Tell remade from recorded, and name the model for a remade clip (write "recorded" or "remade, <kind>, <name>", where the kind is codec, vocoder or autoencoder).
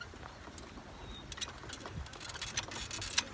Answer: recorded